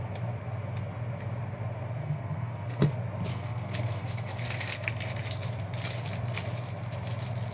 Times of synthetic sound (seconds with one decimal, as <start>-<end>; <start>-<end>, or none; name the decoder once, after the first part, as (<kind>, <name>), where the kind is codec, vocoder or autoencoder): 2.0-2.9 (codec, SNAC); 3.3-4.9